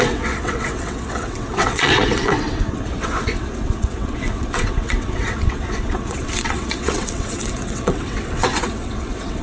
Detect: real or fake fake